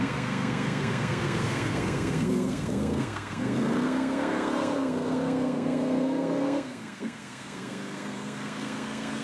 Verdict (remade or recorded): remade